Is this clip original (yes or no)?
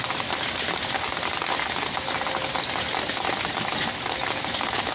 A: yes